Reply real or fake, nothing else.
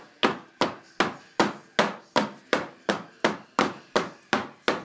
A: real